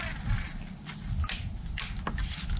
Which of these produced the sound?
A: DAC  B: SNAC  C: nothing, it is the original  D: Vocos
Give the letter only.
C